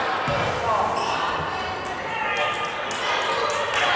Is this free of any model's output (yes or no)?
yes